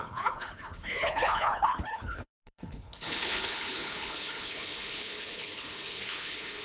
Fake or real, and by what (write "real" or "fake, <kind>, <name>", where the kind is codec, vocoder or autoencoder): fake, codec, HILCodec